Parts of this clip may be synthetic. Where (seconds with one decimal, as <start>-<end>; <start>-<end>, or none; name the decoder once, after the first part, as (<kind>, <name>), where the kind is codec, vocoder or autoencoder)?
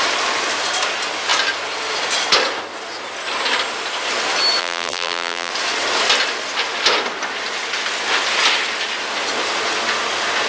4.6-5.5 (vocoder, BigVGAN v2)